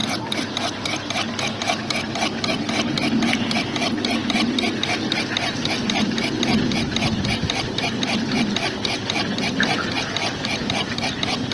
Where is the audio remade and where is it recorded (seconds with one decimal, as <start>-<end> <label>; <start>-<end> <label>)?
0.0-1.4 remade; 1.4-11.5 recorded